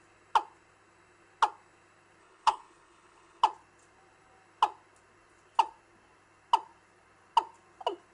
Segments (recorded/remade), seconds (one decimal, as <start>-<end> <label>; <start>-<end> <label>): 0.0-2.2 recorded; 2.2-3.4 remade; 3.4-8.1 recorded